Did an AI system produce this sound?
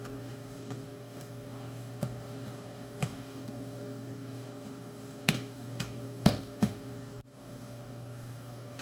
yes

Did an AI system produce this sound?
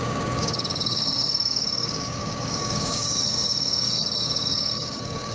yes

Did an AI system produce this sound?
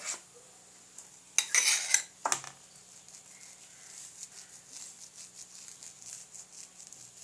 no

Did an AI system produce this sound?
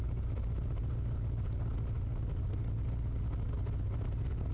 no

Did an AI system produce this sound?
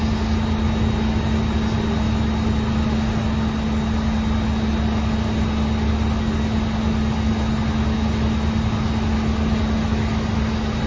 no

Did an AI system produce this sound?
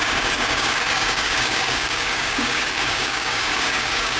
yes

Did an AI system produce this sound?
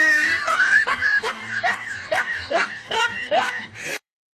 yes